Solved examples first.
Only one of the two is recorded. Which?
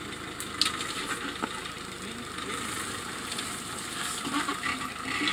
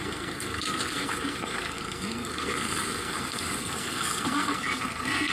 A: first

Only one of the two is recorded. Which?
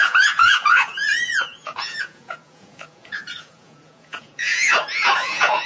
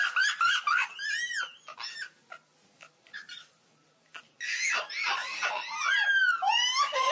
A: second